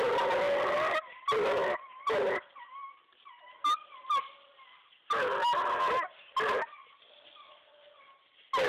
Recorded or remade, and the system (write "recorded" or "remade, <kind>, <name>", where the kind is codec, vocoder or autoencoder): recorded